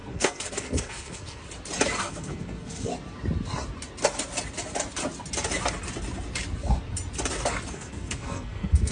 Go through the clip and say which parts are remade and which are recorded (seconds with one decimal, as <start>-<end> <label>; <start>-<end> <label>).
0.0-1.4 remade; 1.4-2.0 recorded; 2.0-2.9 remade; 2.9-7.7 recorded; 7.7-8.9 remade